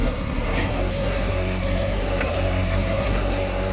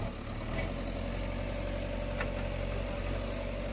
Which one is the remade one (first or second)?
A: first